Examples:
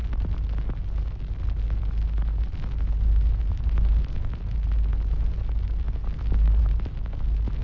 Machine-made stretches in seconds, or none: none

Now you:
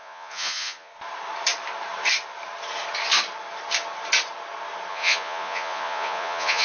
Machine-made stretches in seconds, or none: 0.0-0.9 (vocoder, Vocos); 4.9-6.6

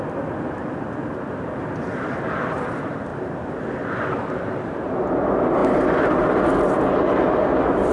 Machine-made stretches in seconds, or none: none

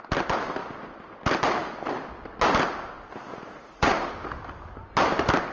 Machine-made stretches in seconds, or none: 3.3-4.1 (vocoder, Vocos)

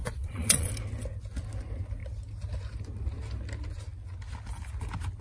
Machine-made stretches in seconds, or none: 0.0-0.7 (vocoder, Vocos)

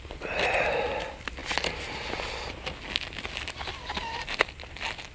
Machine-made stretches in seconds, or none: none

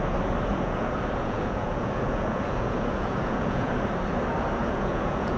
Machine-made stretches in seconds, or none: 0.5-3.7 (vocoder, Vocos); 4.6-5.4